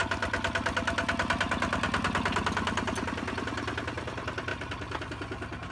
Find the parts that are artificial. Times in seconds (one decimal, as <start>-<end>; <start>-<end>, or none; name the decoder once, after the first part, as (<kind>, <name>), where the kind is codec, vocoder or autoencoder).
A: none